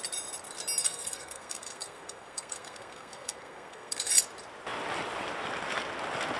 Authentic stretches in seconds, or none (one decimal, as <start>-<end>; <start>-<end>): 0.0-0.8; 4.1-6.4